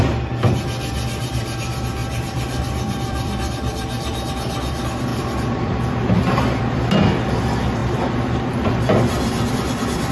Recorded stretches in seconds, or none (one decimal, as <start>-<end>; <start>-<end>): 0.0-2.0; 4.3-5.1; 6.6-10.1